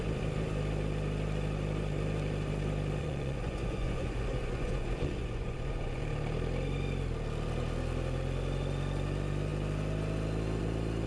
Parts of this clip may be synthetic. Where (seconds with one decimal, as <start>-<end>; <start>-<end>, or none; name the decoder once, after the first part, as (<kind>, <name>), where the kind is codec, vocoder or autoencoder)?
3.0-6.0 (vocoder, Vocos)